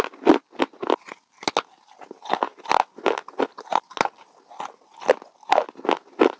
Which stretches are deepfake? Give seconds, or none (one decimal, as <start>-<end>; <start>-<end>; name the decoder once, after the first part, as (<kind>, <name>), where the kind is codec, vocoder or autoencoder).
none